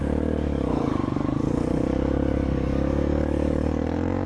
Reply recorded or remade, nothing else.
remade